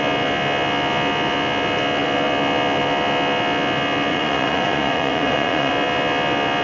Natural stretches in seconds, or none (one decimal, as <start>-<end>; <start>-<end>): 0.0-4.1; 5.7-6.6